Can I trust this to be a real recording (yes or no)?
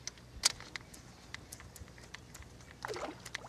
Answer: yes